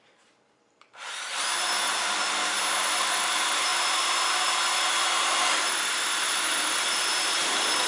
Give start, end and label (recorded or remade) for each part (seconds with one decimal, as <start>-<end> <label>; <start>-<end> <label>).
0.0-1.9 remade; 1.9-2.8 recorded; 2.8-7.9 remade